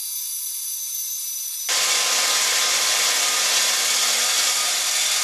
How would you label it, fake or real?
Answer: real